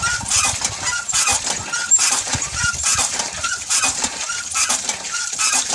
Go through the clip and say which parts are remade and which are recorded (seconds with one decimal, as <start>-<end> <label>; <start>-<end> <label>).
0.0-1.3 remade; 1.3-1.9 recorded; 1.9-5.7 remade